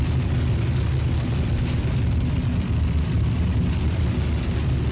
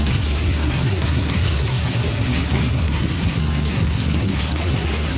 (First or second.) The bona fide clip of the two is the first